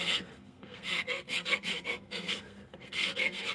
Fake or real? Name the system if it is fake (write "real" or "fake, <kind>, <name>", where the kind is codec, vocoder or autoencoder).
fake, codec, SNAC